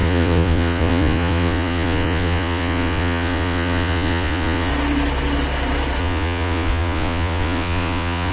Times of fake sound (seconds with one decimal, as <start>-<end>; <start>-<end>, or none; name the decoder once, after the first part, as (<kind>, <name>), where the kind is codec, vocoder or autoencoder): 0.0-4.7 (vocoder, Vocos); 6.0-8.3